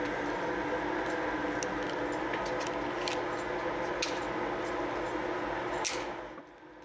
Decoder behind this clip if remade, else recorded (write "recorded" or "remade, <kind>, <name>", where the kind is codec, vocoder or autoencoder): recorded